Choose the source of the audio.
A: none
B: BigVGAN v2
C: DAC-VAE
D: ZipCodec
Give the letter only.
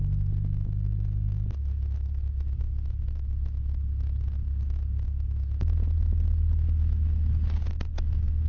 A